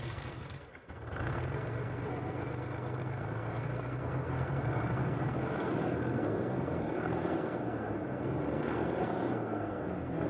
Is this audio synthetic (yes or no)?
yes